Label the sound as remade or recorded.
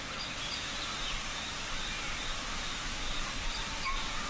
recorded